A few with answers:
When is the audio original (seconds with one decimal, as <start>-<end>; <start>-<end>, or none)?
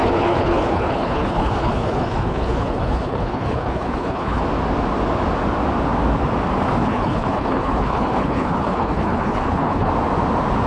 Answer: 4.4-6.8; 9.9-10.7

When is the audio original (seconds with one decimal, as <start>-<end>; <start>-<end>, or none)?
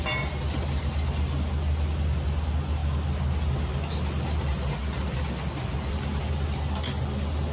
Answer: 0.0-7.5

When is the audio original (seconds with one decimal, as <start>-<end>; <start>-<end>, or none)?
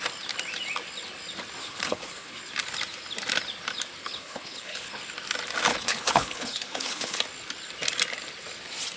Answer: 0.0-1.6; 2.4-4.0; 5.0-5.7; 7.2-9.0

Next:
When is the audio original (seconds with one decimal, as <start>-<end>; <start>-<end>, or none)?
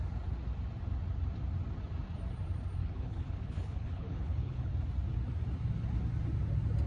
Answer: 0.0-2.8; 4.7-6.9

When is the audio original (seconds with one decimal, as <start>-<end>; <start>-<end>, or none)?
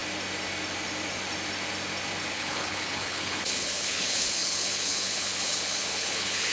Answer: 0.0-2.3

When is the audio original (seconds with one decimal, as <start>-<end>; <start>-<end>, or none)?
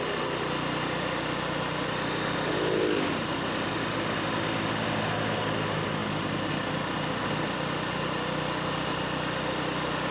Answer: 0.0-10.1